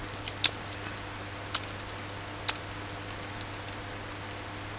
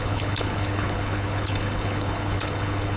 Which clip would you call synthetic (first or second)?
second